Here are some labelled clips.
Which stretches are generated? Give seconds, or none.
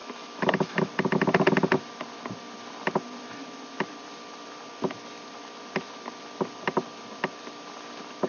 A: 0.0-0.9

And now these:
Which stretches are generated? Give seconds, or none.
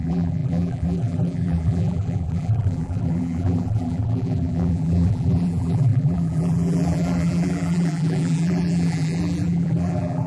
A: 0.0-10.3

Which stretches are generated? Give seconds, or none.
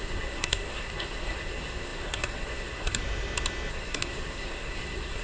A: 0.0-3.0; 3.7-5.2